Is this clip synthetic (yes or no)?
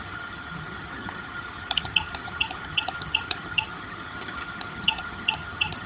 yes